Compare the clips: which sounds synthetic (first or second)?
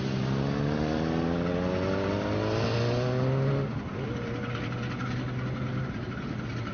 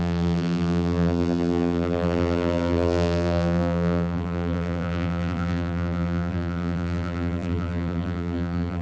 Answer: second